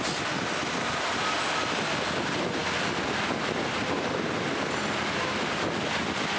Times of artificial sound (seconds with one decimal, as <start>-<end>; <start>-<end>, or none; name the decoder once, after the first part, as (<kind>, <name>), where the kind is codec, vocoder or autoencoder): none